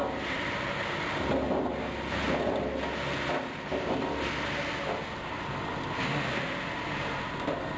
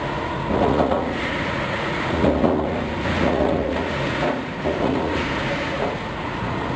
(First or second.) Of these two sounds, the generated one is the second